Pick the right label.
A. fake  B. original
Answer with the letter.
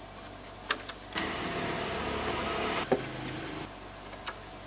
B